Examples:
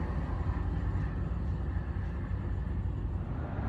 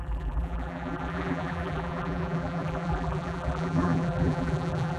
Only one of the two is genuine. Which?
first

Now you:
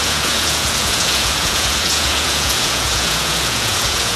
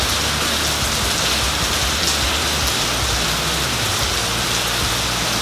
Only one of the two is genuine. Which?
second